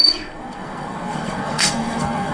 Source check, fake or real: fake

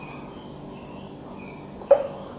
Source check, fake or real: real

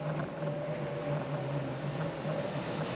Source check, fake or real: real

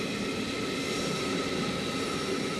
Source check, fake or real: real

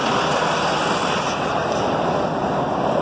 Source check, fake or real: real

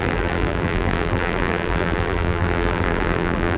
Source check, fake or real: fake